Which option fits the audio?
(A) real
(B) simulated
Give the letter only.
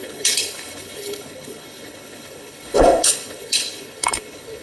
B